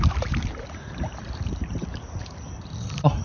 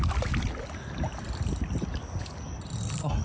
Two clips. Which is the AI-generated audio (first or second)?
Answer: first